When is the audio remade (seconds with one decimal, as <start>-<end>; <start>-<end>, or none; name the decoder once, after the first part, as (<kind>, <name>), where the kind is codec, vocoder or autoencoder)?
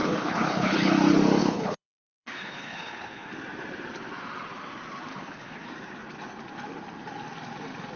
0.0-0.9 (codec, HILCodec); 1.4-3.3; 5.1-5.7